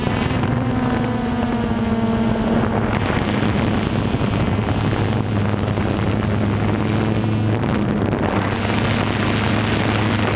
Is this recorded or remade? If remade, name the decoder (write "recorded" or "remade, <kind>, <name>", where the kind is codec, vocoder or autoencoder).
recorded